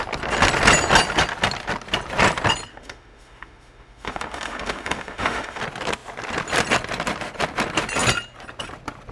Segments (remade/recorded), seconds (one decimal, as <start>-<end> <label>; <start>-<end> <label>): 0.0-2.7 recorded; 2.7-5.6 remade; 5.6-9.1 recorded